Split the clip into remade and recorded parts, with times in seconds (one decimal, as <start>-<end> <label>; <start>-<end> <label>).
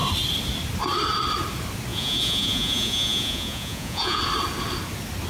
0.0-1.9 recorded; 1.9-4.2 remade; 4.2-5.3 recorded